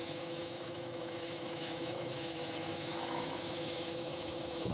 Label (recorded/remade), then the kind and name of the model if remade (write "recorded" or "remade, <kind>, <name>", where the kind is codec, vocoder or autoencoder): remade, autoencoder, DAC-VAE